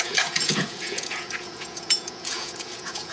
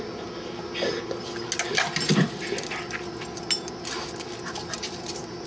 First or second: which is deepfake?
first